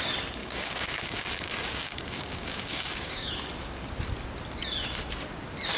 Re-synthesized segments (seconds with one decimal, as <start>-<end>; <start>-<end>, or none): 0.4-3.3